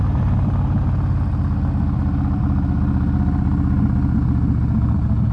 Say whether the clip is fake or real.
real